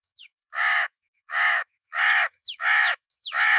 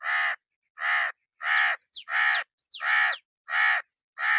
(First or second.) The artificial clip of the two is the first